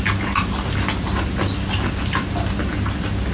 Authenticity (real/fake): real